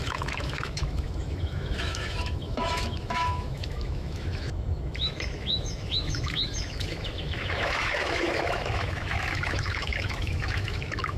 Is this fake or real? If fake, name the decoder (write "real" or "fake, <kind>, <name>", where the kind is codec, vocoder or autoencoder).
fake, autoencoder, DAC-VAE